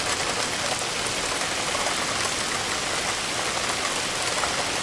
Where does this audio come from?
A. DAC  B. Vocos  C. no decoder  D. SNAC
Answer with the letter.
C